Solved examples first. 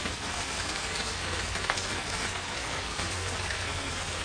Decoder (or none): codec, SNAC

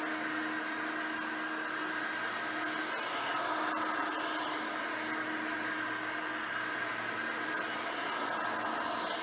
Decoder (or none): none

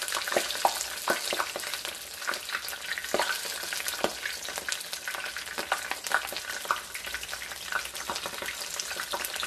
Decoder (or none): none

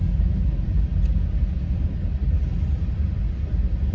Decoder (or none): none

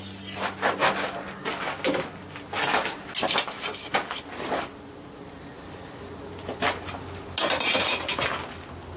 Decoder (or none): none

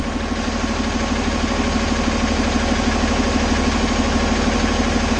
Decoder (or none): none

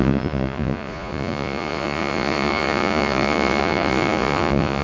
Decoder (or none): vocoder, Vocos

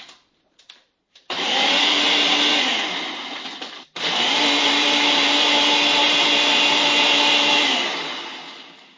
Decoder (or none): vocoder, BigVGAN v2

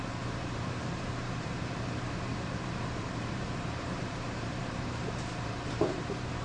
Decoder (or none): vocoder, BigVGAN v2